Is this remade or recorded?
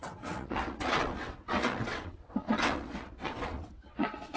remade